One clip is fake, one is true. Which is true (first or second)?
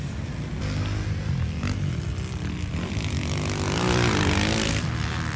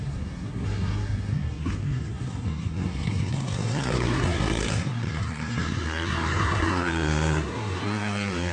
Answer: first